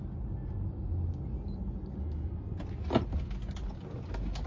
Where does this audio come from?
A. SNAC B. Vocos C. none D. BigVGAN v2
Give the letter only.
C